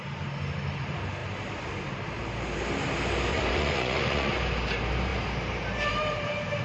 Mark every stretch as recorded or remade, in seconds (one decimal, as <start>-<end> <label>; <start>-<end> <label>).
0.0-3.3 recorded; 3.3-4.3 remade; 4.3-6.6 recorded